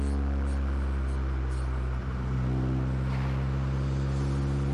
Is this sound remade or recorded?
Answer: recorded